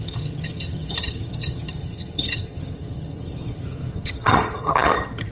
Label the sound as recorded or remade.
remade